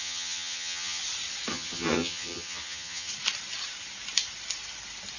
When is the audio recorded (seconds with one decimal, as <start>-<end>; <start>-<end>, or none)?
1.0-1.5; 3.1-5.2